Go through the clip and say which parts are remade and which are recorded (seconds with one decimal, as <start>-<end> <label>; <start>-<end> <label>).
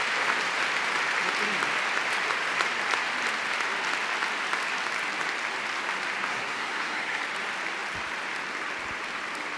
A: 0.0-6.3 recorded; 6.3-7.2 remade; 7.2-9.6 recorded